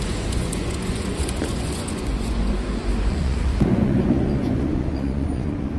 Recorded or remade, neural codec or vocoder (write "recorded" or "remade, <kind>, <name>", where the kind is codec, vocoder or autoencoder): remade, vocoder, Vocos